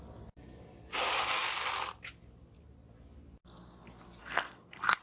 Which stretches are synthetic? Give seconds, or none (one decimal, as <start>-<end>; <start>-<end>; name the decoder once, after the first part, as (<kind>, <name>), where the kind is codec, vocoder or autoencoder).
4.2-5.0 (codec, SNAC)